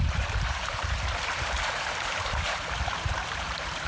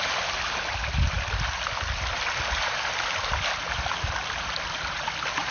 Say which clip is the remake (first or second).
first